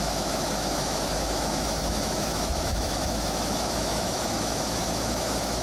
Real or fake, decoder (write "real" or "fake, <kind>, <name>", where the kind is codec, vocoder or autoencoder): fake, autoencoder, DAC-VAE